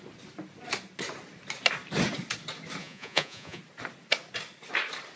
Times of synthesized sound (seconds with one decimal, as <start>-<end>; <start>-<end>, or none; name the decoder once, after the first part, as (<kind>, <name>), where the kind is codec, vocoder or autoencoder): 2.8-3.6 (vocoder, Vocos)